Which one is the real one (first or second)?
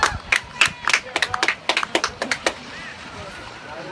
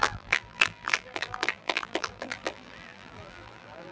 first